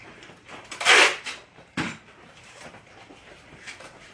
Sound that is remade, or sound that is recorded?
remade